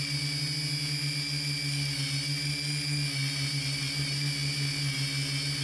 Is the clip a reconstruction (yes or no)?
no